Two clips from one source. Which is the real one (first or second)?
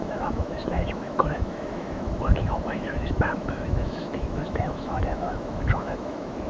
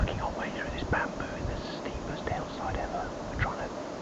second